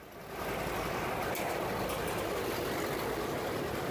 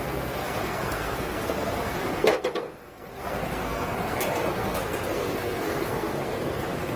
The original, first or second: first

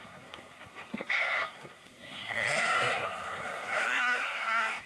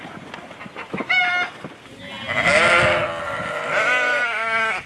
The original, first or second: second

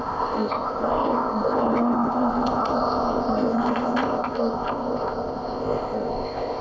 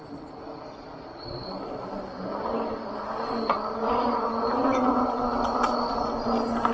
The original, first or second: second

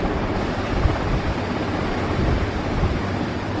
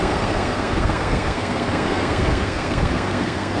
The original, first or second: first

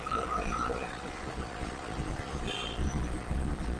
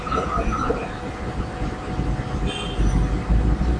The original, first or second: second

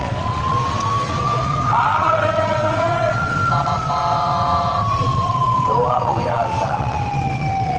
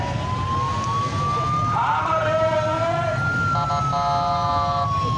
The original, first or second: second